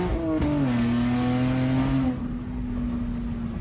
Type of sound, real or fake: real